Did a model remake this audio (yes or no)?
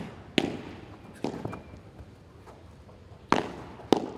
no